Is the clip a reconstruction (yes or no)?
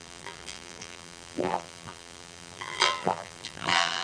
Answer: yes